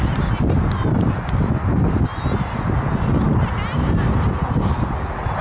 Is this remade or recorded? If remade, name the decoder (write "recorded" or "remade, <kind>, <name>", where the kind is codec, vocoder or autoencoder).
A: recorded